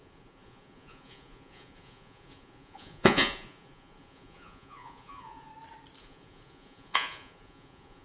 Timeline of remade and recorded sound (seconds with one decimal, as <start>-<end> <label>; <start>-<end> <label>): 0.0-5.5 remade; 5.5-6.0 recorded; 6.0-8.0 remade